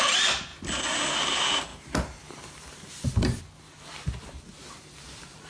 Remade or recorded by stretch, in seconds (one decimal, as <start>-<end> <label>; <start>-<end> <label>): 0.0-0.5 remade; 0.5-1.1 recorded; 1.1-5.5 remade